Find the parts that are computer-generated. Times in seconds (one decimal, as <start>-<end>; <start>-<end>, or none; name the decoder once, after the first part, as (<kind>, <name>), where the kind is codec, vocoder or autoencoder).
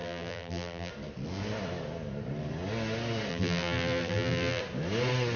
0.0-0.9 (vocoder, BigVGAN v2); 3.3-4.6